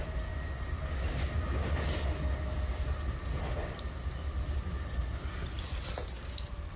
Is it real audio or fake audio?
real